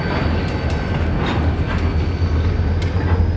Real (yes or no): yes